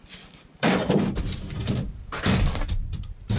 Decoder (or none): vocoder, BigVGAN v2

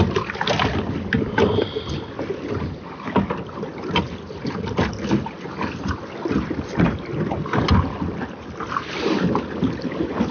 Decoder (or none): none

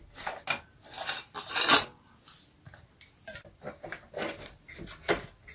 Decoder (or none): none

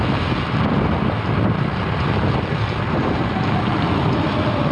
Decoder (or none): vocoder, BigVGAN v2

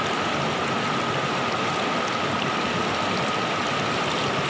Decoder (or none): none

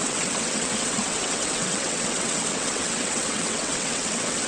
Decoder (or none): vocoder, WaveNeXt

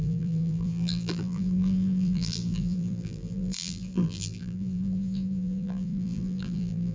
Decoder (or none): vocoder, BigVGAN v2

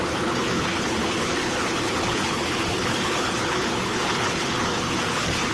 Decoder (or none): codec, HILCodec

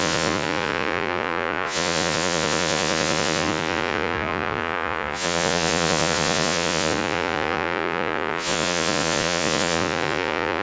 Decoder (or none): vocoder, Vocos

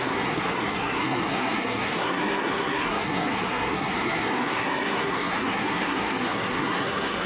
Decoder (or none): codec, SNAC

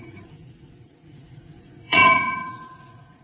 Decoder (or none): vocoder, Vocos